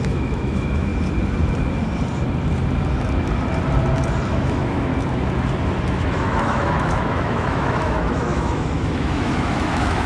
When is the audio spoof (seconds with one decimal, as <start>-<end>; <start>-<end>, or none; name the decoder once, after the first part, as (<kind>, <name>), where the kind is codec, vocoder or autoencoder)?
0.0-0.9 (autoencoder, DAC-VAE); 4.3-4.9; 5.9-10.1